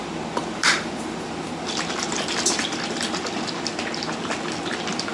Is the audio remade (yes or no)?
no